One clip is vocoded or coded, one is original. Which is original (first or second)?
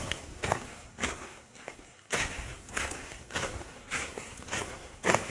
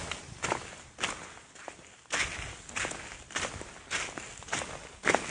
second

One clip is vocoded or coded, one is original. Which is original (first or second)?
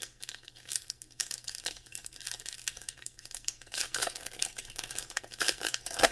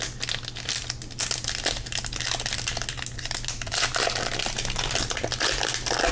second